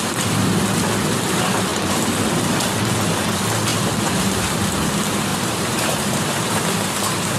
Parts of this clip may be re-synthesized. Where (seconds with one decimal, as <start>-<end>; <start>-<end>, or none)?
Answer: 3.7-4.2; 5.3-6.6